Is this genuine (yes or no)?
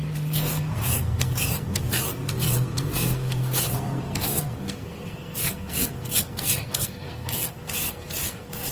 no